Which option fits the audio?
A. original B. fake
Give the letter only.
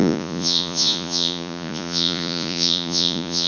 B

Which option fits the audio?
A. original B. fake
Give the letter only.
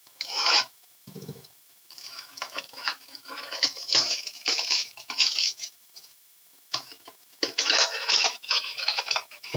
B